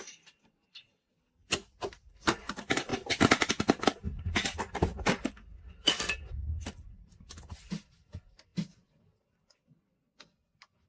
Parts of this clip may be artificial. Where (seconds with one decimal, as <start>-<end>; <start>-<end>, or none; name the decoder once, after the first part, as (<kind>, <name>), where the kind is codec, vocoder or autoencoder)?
none